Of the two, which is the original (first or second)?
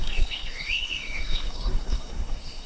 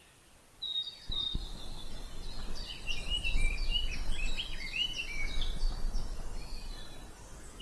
second